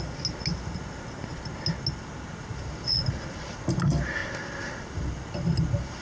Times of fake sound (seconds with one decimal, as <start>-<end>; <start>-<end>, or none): none